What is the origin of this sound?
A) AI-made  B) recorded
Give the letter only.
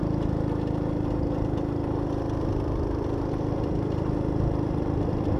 B